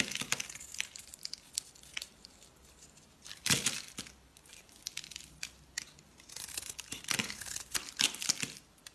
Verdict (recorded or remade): recorded